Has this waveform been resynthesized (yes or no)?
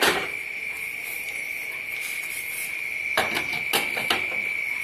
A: no